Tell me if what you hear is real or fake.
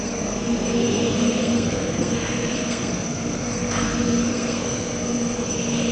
fake